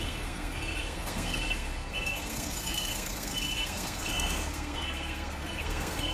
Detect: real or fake fake